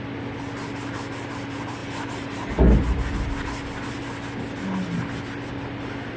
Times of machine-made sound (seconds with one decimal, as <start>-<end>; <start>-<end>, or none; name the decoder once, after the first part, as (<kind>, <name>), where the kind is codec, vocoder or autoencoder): none